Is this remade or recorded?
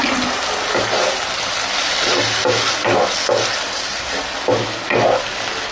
recorded